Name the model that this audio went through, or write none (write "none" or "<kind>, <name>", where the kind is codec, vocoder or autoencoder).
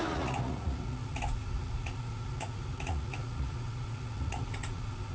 vocoder, Vocos